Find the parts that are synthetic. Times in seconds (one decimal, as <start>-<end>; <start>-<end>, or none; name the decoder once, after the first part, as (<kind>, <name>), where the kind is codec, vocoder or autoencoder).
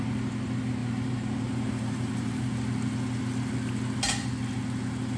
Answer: 0.8-2.5 (vocoder, BigVGAN v2)